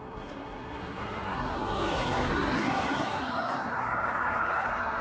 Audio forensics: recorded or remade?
remade